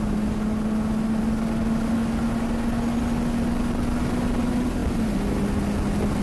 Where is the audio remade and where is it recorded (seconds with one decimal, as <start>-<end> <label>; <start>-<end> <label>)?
0.0-6.2 recorded